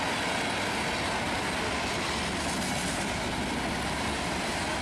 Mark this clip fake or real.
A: real